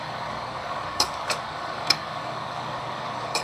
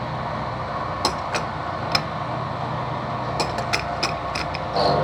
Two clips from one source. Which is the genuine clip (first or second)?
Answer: second